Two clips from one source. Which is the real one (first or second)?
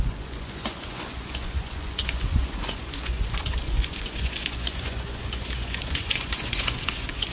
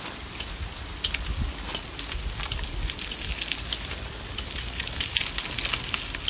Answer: second